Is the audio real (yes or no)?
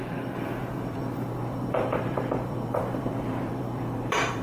no